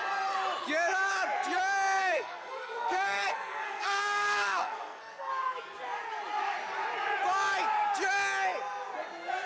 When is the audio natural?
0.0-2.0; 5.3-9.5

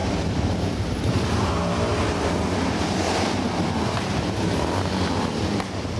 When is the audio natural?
1.5-1.9; 4.9-6.0

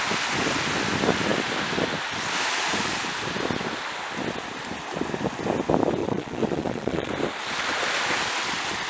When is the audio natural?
0.0-6.0; 7.1-8.9

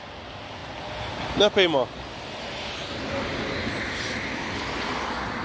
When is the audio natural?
0.0-5.4

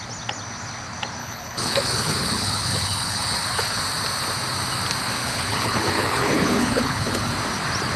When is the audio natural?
0.0-1.2; 3.8-5.2; 7.3-8.0

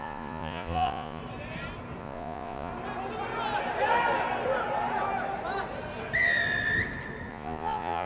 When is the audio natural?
1.2-2.0; 2.7-7.3